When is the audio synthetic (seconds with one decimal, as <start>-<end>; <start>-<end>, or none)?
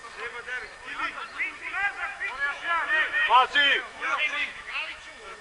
2.1-5.4